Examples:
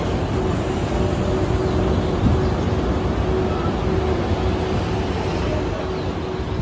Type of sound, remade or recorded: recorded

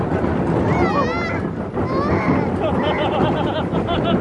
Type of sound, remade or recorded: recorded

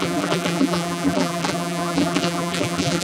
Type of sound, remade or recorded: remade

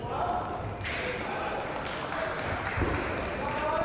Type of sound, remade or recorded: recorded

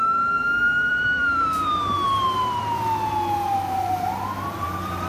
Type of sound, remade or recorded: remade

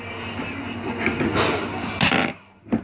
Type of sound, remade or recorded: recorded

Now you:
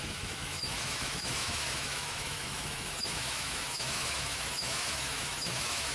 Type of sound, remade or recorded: remade